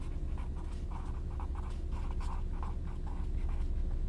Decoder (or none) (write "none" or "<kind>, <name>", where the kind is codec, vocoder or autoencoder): none